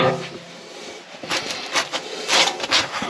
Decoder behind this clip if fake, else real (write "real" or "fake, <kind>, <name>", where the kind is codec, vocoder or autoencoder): real